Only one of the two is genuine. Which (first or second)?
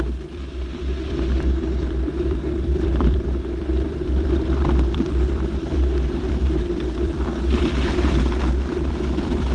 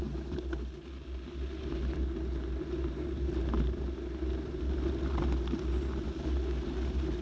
second